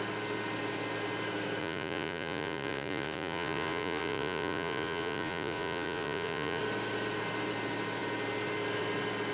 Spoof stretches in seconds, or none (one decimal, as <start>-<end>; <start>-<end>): 1.6-6.6